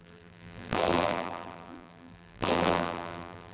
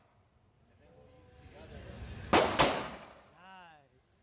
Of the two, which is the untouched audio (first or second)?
second